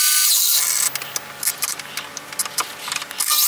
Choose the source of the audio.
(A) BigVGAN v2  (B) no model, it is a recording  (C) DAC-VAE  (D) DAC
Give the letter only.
B